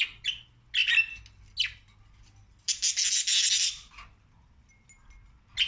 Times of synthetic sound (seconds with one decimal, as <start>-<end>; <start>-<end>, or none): none